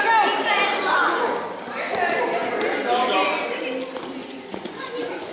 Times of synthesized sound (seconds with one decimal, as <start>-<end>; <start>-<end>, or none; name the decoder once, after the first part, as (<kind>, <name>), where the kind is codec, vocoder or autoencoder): 0.8-1.3 (vocoder, Vocos); 4.2-5.3